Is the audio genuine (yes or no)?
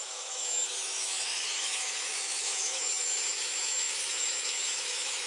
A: no